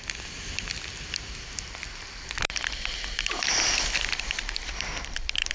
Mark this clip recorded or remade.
remade